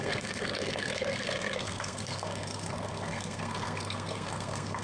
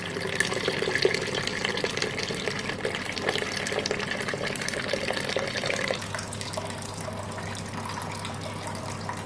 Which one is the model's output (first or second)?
first